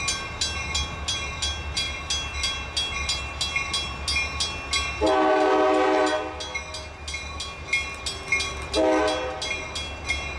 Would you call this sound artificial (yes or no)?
no